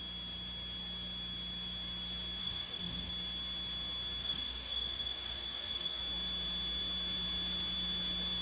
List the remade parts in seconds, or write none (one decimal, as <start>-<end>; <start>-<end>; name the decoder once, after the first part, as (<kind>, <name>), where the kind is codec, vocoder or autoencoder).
2.4-3.1 (codec, DAC); 4.2-6.0